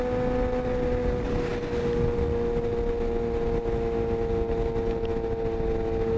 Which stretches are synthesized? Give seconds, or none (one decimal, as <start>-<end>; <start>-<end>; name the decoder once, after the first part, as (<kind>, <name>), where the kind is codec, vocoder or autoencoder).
none